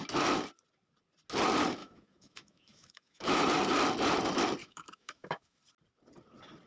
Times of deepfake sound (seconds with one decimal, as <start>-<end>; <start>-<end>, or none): 1.8-3.4; 4.6-5.6